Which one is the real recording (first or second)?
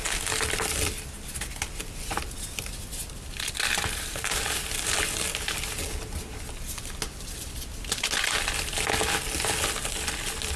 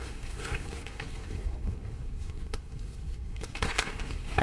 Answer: first